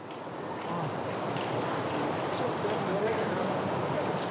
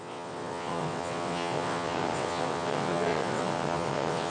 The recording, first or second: first